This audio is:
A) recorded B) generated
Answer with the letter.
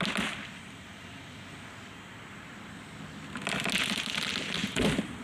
A